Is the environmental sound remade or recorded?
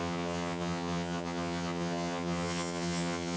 remade